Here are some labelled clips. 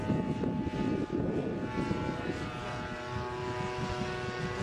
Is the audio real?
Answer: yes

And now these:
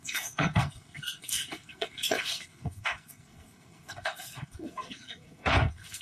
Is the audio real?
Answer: no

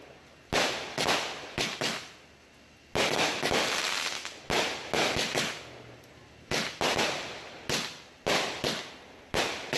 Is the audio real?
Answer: yes